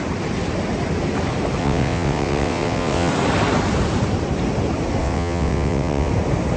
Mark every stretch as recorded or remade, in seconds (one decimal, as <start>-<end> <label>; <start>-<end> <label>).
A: 0.0-1.6 recorded; 1.6-3.1 remade; 3.1-5.0 recorded; 5.0-6.1 remade; 6.1-6.6 recorded